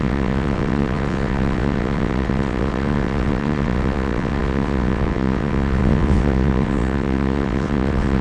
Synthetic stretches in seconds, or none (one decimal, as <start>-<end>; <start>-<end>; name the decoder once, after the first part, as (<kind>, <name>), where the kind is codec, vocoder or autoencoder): 0.0-8.2 (vocoder, WaveNeXt)